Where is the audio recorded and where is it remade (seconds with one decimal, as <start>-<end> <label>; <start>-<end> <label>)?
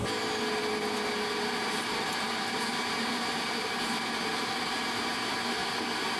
0.0-6.2 recorded